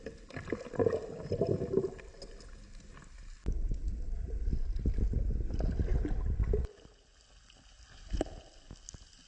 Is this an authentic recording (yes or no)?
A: yes